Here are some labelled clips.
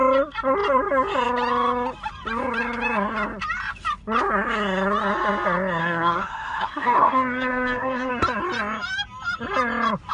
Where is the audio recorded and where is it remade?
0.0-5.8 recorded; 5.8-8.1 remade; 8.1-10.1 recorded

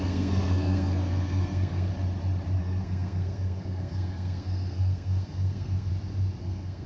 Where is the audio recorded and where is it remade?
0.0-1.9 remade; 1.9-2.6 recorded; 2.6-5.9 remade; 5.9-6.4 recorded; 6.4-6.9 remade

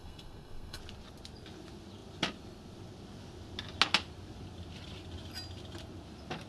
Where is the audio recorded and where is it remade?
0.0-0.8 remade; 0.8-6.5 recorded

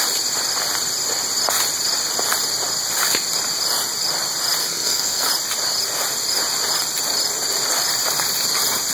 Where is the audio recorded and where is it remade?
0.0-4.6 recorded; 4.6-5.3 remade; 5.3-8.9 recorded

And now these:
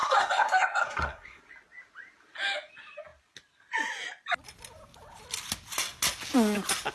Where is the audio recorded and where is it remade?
0.0-1.4 remade; 1.4-6.9 recorded